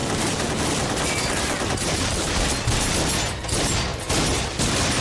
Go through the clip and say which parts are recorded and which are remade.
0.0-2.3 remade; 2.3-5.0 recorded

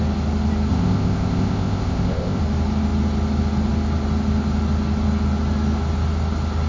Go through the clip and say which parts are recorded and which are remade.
0.0-0.7 recorded; 0.7-2.4 remade; 2.4-6.7 recorded

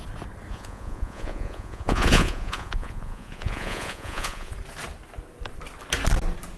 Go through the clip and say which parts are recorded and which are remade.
0.0-0.5 recorded; 0.5-4.5 remade; 4.5-6.6 recorded

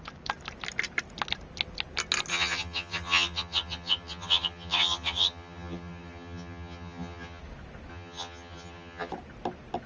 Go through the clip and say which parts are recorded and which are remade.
0.0-2.3 recorded; 2.3-7.4 remade; 7.4-7.9 recorded; 7.9-9.1 remade; 9.1-9.9 recorded